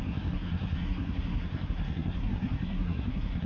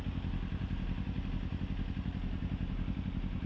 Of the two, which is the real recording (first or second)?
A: second